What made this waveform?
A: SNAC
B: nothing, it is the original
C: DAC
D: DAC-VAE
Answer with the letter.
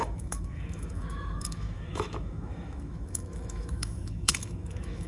D